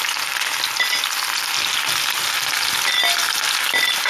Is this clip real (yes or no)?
yes